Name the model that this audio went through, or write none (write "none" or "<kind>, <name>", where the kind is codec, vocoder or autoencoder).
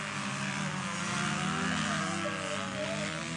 none